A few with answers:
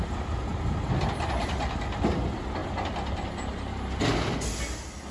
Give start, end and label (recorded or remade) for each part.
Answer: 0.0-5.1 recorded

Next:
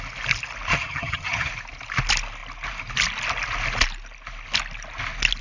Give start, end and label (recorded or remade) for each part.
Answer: 0.0-0.7 recorded; 0.7-1.5 remade; 1.5-5.4 recorded

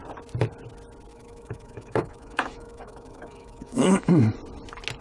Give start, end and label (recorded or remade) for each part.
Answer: 0.0-1.1 recorded; 1.1-4.1 remade; 4.1-5.0 recorded